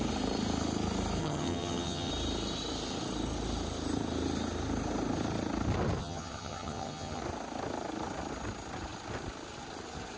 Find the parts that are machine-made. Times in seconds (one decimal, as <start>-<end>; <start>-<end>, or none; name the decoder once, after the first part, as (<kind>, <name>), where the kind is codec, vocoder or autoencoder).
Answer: 1.2-2.1 (vocoder, HiFi-GAN); 6.0-7.2